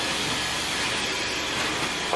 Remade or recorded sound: recorded